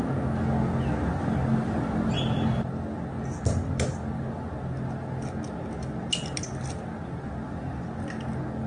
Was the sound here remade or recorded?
recorded